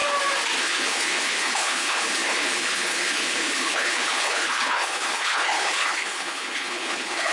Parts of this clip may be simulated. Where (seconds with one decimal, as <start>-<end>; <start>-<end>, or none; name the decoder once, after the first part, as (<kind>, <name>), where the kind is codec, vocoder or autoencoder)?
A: 0.6-7.3 (codec, HILCodec)